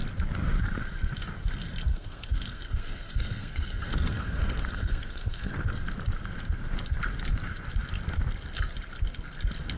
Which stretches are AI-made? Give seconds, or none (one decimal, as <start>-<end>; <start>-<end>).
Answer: 1.9-5.5